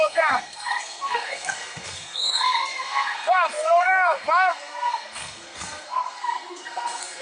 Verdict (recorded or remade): remade